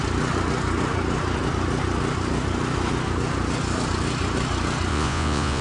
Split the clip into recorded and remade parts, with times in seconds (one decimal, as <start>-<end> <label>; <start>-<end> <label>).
0.0-4.9 recorded; 4.9-5.6 remade